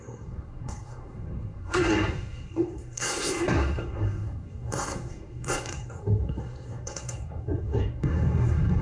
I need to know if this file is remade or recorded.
remade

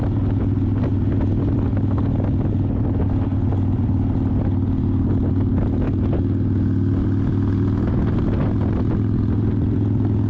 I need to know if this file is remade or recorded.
recorded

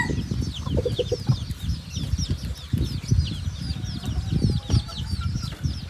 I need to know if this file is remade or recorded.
recorded